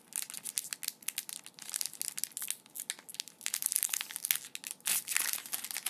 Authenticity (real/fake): real